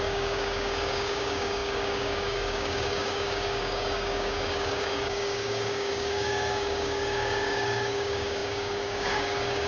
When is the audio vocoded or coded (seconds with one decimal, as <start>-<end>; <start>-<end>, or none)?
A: 0.0-9.7